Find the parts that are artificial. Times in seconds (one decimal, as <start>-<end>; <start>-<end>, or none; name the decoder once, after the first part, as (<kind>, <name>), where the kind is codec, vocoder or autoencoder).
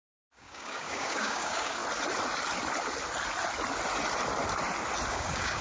0.0-1.8 (codec, DAC); 5.1-5.6